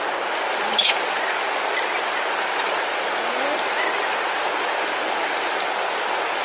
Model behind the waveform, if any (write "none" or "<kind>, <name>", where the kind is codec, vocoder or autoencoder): none